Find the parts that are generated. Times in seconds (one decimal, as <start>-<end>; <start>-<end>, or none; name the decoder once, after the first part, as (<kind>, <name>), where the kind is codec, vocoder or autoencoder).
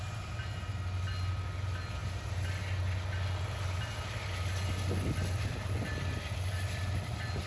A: none